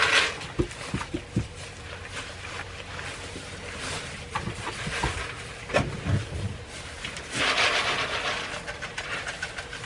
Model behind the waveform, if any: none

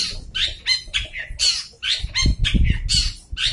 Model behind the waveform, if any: none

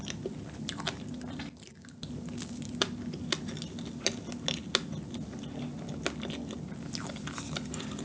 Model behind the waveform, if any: none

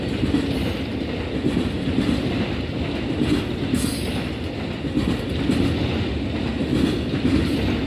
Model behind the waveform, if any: none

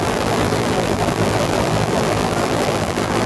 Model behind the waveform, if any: vocoder, BigVGAN v2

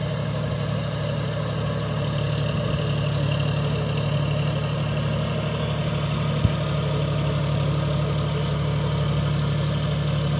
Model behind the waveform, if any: none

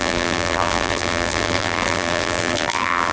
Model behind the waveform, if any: vocoder, BigVGAN v2